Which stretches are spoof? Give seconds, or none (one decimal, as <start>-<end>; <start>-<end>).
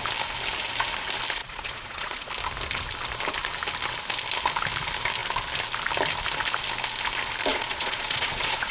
1.4-2.3; 7.5-8.7